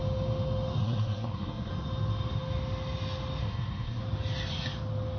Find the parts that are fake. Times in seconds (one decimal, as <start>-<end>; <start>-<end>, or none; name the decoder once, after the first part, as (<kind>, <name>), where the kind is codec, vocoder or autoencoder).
0.8-1.7 (codec, SNAC); 3.4-4.0